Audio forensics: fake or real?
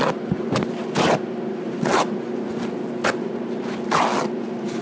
real